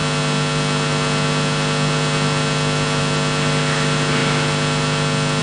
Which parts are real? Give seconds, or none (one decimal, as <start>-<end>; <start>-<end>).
0.0-5.4